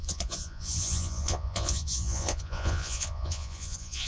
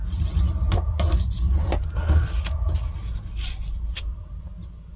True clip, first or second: second